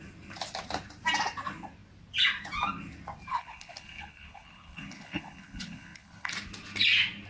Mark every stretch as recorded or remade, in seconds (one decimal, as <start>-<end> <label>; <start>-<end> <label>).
0.0-3.3 recorded; 3.3-6.3 remade; 6.3-7.3 recorded